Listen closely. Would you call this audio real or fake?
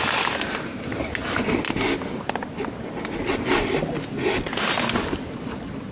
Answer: real